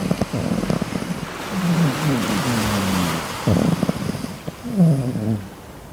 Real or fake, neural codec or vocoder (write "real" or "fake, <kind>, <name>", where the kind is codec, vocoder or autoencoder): real